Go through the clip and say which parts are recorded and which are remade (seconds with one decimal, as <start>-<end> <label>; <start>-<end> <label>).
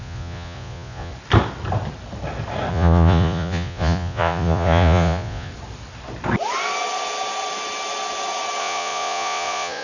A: 0.0-1.1 remade; 1.1-2.7 recorded; 2.7-5.5 remade; 5.5-8.6 recorded; 8.6-9.8 remade